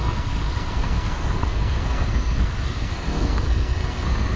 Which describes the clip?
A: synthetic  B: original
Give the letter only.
A